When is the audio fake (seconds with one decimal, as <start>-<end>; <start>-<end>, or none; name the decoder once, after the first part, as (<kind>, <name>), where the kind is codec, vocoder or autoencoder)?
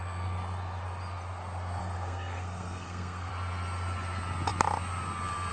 1.8-3.3 (codec, SNAC)